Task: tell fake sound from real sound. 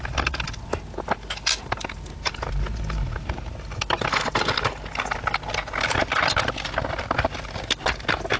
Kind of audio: real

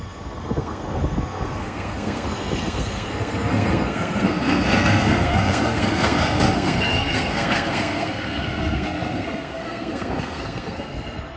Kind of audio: fake